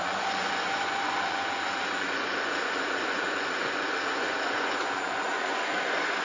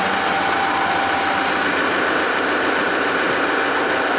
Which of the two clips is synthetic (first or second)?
first